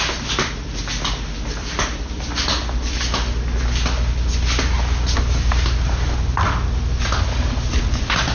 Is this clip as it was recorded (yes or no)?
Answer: yes